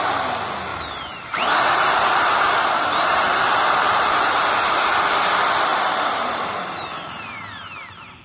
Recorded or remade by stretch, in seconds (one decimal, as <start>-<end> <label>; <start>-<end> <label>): 0.0-0.7 recorded; 0.7-4.5 remade; 4.5-5.7 recorded; 5.7-8.2 remade